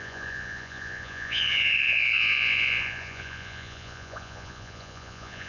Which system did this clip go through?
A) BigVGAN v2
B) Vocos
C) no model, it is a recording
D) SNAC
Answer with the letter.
B